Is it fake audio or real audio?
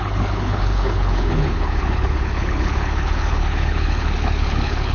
fake